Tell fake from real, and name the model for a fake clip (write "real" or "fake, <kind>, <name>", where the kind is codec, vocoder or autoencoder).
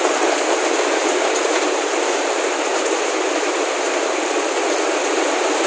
fake, vocoder, BigVGAN v2